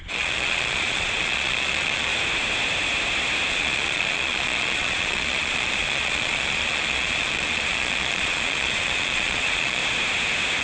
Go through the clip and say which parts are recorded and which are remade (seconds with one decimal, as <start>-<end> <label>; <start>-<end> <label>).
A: 0.0-2.1 remade; 2.1-3.5 recorded; 3.5-9.8 remade; 9.8-10.6 recorded